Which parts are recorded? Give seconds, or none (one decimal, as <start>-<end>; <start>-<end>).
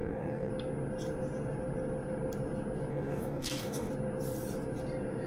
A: 0.5-2.9; 3.9-5.3